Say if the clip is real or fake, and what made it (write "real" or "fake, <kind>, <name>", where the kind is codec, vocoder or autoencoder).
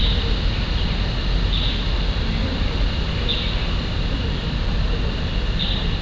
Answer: real